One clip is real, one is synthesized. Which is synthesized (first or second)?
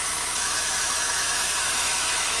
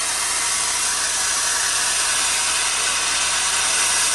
first